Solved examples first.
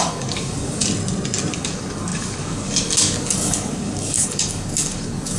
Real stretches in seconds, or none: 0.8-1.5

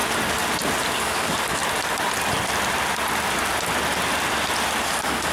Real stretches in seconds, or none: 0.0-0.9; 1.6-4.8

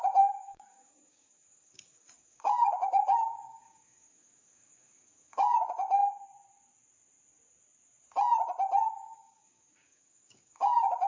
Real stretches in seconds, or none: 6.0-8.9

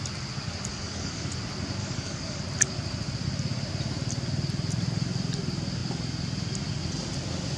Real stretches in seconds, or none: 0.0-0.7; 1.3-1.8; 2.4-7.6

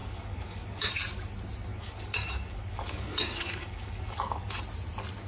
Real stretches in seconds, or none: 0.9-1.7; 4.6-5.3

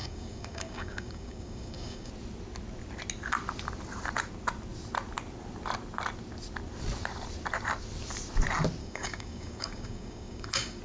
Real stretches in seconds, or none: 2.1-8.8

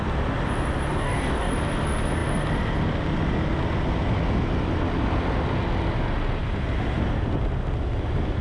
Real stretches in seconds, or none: 0.0-0.9; 1.5-8.4

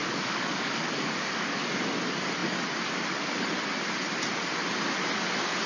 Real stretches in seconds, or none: 1.8-5.7